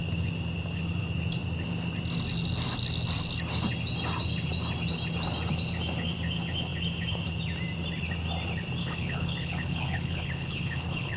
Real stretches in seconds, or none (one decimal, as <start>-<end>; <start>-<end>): 0.0-8.8